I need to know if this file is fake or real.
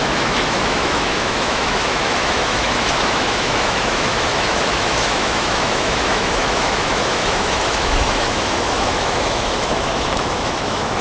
fake